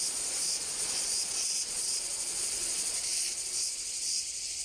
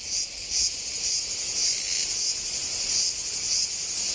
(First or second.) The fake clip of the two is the first